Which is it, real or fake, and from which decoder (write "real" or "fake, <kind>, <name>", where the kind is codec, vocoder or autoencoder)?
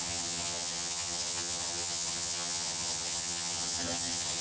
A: fake, vocoder, HiFi-GAN